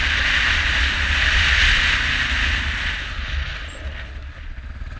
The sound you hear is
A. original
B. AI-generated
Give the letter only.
A